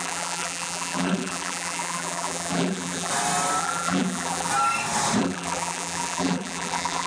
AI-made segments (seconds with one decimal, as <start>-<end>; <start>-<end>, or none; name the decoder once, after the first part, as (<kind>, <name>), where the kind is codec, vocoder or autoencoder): 0.0-3.1 (vocoder, BigVGAN v2); 3.6-4.5; 5.2-7.1